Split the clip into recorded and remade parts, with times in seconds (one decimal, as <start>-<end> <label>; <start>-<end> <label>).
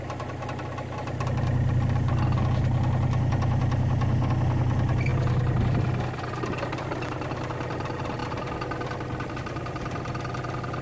0.0-10.8 recorded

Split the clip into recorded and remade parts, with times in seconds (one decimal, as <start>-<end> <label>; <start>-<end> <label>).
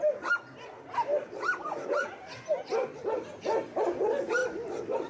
0.0-5.1 recorded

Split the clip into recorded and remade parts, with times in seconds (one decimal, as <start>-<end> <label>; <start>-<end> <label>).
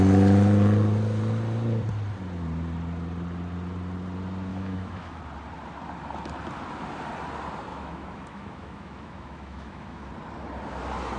0.0-4.5 recorded; 4.5-5.2 remade; 5.2-7.7 recorded; 7.7-10.1 remade; 10.1-11.2 recorded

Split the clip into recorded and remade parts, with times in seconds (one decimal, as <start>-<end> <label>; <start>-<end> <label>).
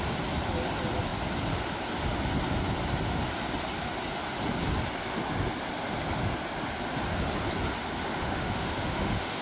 0.0-8.2 recorded; 8.2-9.4 remade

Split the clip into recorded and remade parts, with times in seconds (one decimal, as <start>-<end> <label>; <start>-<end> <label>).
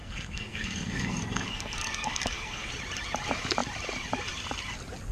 0.0-2.7 remade; 2.7-5.1 recorded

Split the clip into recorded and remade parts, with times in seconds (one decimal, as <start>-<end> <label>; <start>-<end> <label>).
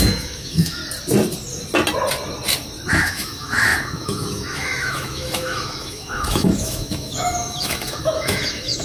0.0-0.8 remade; 0.8-2.9 recorded; 2.9-8.8 remade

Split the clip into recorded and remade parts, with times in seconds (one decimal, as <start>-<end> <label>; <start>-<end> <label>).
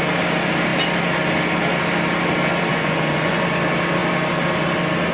0.0-2.7 recorded; 2.7-3.4 remade; 3.4-5.1 recorded